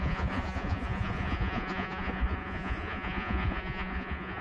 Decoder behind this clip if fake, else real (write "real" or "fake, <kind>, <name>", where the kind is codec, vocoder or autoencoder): fake, vocoder, Vocos